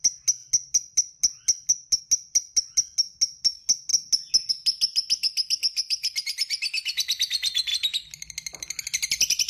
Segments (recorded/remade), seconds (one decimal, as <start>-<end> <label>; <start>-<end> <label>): 0.0-9.5 recorded